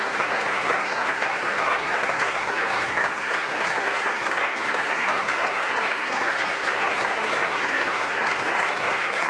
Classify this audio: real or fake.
fake